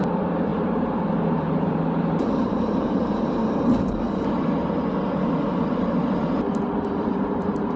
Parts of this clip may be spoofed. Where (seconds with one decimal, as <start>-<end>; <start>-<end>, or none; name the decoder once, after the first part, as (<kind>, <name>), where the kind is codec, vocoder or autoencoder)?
0.0-3.4 (vocoder, BigVGAN v2); 6.8-7.8